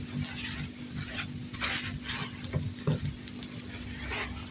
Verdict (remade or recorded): recorded